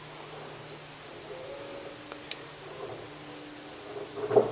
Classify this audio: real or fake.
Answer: real